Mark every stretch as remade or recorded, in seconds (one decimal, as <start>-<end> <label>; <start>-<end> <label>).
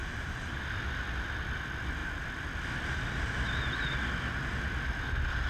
0.0-0.6 remade; 0.6-5.5 recorded